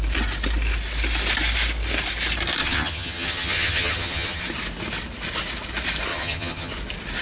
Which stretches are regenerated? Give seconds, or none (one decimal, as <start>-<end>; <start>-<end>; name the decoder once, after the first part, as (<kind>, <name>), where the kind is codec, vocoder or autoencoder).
2.6-4.4 (vocoder, HiFi-GAN); 6.1-6.7